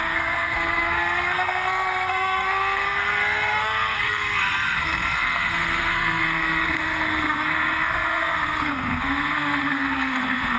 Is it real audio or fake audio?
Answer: fake